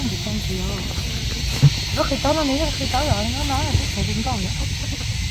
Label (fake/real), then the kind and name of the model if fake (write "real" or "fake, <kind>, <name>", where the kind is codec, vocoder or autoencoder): real